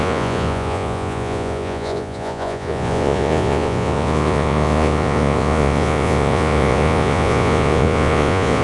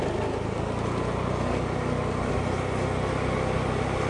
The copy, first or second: first